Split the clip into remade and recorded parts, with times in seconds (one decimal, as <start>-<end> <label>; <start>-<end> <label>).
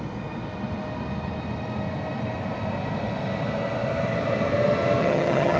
0.0-5.0 recorded; 5.0-5.6 remade